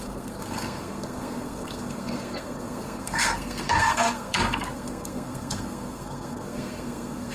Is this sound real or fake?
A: fake